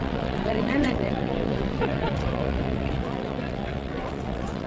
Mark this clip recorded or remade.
remade